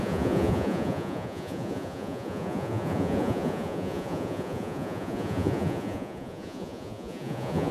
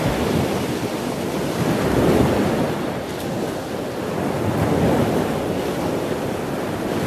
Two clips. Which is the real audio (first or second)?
second